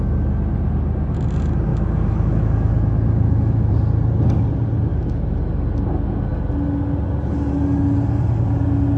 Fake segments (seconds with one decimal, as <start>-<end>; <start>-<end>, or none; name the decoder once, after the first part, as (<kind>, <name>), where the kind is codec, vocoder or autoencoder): 1.7-3.7 (autoencoder, DAC-VAE); 4.9-5.4